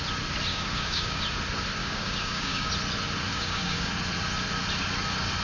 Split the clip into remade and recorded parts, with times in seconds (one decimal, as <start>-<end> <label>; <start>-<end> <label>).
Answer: 0.0-0.5 recorded; 0.5-1.2 remade; 1.2-1.8 recorded; 1.8-2.7 remade; 2.7-3.3 recorded; 3.3-3.9 remade; 3.9-5.4 recorded